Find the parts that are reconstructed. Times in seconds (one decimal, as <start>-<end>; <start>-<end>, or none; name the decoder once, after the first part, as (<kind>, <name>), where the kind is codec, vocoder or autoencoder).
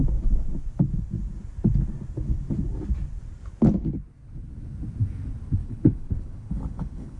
5.6-7.2 (codec, HILCodec)